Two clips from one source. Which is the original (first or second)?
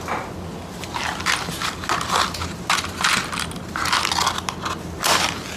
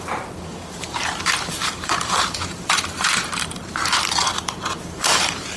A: first